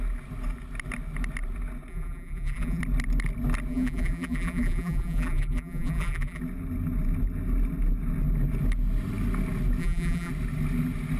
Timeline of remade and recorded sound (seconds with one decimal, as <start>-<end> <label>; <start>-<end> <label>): 0.0-1.9 recorded; 1.9-2.8 remade; 2.8-3.7 recorded; 3.7-6.4 remade; 6.4-9.8 recorded; 9.8-10.3 remade; 10.3-11.2 recorded